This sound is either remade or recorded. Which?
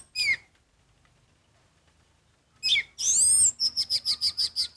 recorded